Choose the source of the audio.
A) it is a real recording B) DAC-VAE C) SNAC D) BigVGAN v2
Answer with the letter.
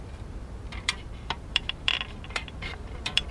D